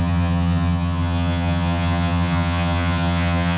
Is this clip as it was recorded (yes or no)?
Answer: no